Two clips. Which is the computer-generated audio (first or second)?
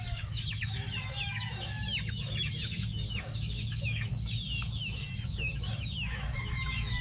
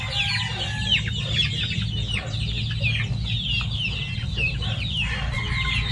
first